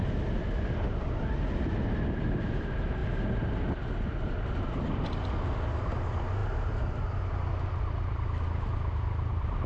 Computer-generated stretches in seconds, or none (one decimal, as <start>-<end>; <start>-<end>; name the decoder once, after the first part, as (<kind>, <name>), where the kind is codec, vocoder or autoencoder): none